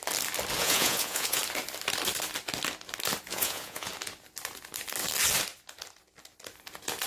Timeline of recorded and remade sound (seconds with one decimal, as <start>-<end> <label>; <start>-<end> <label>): 0.0-0.6 recorded; 0.6-1.4 remade; 1.4-3.3 recorded; 3.3-3.9 remade; 3.9-7.1 recorded